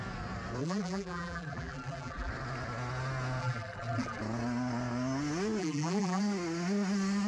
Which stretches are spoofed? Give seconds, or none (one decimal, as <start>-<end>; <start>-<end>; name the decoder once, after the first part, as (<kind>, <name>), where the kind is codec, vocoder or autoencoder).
0.6-2.3 (vocoder, BigVGAN v2); 3.4-4.2; 5.6-6.2